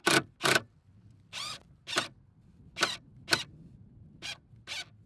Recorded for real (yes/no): yes